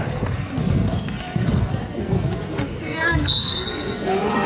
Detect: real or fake fake